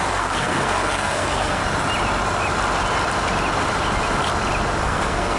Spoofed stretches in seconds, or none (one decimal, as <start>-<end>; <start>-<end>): 0.0-1.6; 4.8-5.4

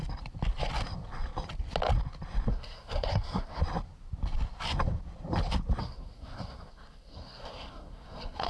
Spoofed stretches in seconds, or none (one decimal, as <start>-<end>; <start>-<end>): 2.5-3.6; 5.8-8.5

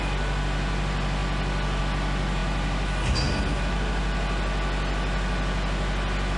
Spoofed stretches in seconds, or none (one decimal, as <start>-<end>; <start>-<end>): none